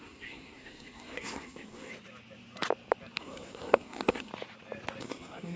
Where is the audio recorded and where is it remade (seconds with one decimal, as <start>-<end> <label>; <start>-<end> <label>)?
0.0-1.9 remade; 1.9-3.2 recorded; 3.2-4.3 remade; 4.3-5.0 recorded; 5.0-5.6 remade